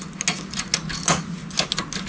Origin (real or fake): real